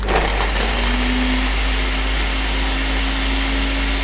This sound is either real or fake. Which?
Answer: real